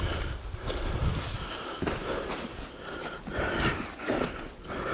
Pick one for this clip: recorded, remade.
recorded